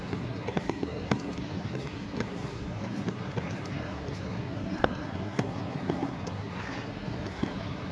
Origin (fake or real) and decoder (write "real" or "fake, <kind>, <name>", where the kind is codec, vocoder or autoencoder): fake, codec, SNAC